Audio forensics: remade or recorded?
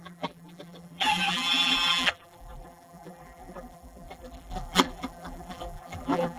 remade